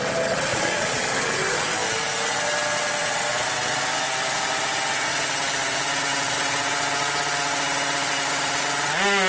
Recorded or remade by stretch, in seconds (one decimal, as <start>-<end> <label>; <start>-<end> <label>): 0.0-0.5 recorded; 0.5-1.0 remade; 1.0-9.3 recorded